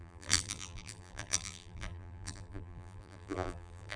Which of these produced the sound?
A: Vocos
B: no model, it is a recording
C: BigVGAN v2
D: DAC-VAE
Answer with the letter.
C